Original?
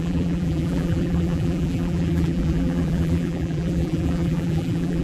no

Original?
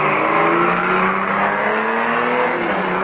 yes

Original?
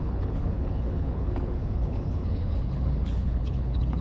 no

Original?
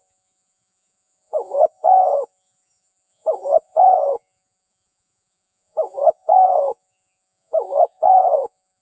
no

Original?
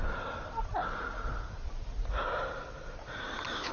yes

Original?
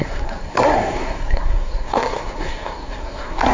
no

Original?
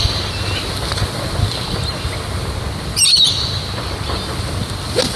yes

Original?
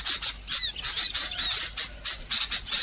yes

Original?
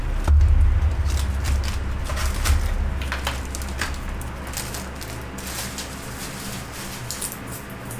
yes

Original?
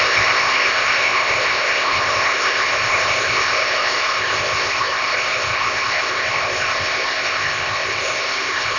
no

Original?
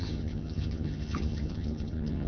no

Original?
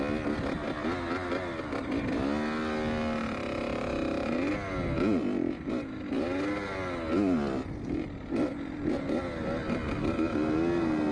yes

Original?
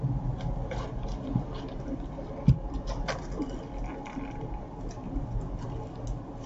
yes